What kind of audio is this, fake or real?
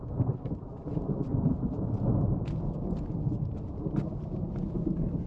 real